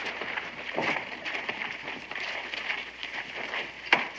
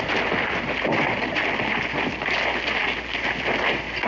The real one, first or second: second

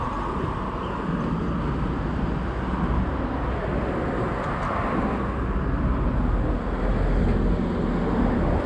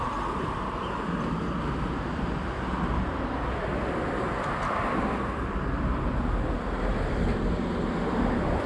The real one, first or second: first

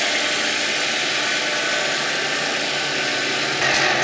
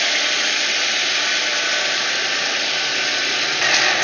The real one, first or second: first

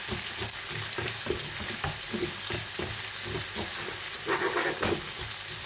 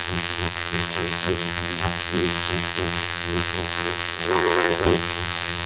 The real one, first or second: first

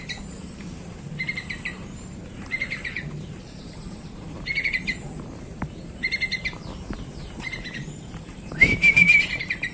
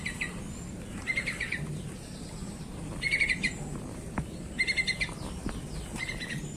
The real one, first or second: second